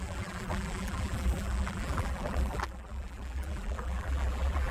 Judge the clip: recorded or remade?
remade